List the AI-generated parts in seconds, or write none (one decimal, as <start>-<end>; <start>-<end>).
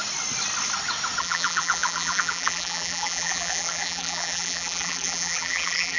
1.2-6.0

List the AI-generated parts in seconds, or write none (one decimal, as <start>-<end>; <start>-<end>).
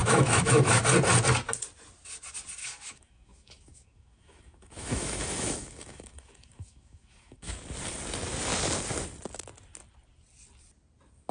0.0-0.8; 2.6-7.5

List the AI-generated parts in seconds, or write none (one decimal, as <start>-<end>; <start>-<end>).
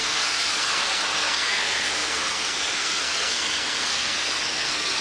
0.0-5.0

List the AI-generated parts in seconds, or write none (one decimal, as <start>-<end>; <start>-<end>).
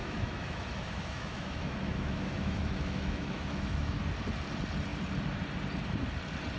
0.0-4.0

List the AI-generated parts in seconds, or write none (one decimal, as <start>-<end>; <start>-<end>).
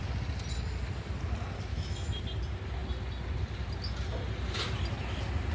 1.7-2.2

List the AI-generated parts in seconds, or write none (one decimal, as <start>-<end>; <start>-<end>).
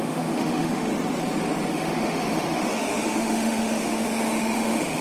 0.0-0.9; 1.7-5.0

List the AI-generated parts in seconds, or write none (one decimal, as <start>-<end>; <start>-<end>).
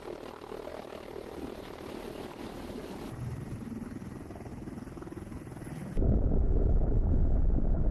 0.7-1.9; 4.5-7.2